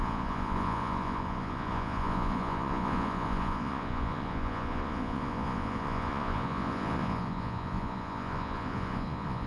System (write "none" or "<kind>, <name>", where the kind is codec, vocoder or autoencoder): vocoder, Vocos